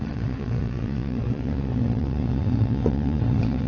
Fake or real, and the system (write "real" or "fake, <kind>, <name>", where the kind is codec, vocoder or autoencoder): fake, vocoder, WaveNeXt